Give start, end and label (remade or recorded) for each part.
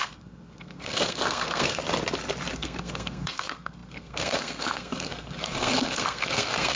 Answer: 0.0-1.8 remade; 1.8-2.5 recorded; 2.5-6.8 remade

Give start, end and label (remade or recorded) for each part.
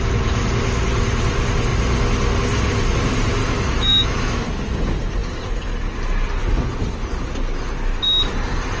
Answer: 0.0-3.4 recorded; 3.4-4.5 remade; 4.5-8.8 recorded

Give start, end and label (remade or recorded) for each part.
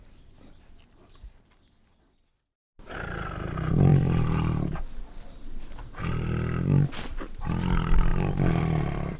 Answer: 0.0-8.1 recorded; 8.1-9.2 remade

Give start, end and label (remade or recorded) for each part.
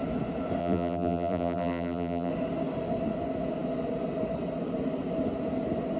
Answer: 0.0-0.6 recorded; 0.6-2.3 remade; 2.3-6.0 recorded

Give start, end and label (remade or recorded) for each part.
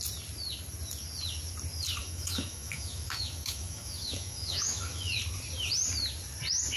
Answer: 0.0-2.0 recorded; 2.0-5.2 remade; 5.2-6.8 recorded